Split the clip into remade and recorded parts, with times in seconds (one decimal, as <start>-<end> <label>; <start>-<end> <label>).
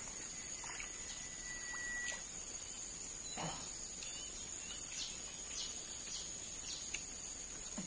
0.0-7.9 recorded